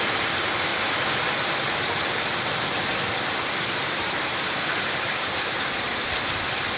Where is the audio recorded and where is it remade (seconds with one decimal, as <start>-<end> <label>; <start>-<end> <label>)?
0.0-3.6 recorded; 3.6-5.9 remade; 5.9-6.8 recorded